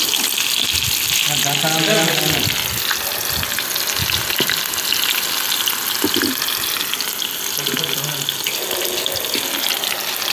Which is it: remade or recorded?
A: recorded